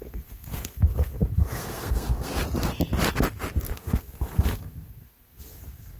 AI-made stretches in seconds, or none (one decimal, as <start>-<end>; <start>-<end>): 0.0-2.3; 3.7-6.0